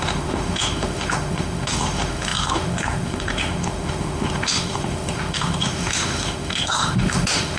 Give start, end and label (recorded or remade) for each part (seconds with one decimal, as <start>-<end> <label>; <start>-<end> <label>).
0.0-7.6 remade